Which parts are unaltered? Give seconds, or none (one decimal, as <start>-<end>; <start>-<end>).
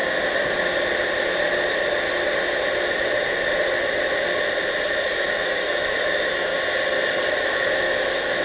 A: 0.0-5.0; 6.5-7.2